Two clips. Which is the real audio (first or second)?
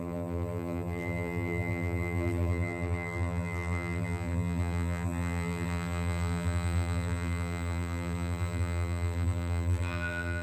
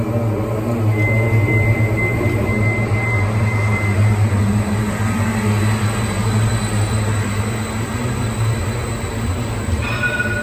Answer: second